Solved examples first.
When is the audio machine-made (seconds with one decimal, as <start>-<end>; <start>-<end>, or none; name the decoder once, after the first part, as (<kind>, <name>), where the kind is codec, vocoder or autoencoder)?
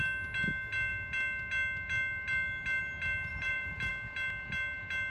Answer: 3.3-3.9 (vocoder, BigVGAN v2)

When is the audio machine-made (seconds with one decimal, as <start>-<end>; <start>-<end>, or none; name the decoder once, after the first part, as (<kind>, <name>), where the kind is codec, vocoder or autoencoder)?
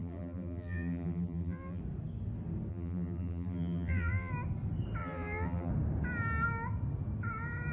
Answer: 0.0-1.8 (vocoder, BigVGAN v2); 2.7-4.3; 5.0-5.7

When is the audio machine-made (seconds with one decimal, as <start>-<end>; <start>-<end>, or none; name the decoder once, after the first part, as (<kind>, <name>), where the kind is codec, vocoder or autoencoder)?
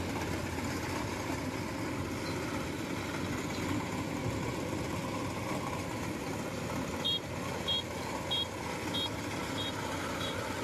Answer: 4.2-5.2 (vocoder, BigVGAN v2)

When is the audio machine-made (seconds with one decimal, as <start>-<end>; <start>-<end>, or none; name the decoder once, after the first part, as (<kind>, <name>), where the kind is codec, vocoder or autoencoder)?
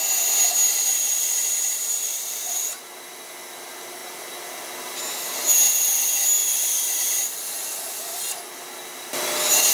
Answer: 0.9-2.9 (vocoder, BigVGAN v2); 6.4-7.0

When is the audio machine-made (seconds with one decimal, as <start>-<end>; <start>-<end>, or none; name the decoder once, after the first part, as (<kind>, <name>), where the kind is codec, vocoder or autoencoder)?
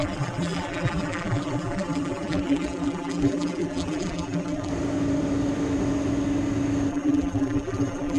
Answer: 0.0-4.7 (vocoder, BigVGAN v2); 6.9-8.2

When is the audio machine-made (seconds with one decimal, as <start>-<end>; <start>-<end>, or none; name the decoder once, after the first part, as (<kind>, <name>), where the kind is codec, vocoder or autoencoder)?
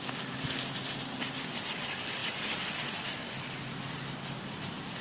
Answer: 2.2-3.0 (vocoder, BigVGAN v2)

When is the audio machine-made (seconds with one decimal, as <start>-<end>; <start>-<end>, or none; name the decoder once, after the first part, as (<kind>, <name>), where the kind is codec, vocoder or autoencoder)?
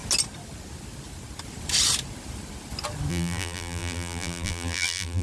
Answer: 3.1-5.2 (vocoder, BigVGAN v2)